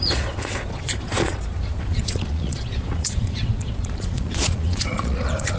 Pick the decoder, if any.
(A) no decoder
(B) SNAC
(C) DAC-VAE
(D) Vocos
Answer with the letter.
D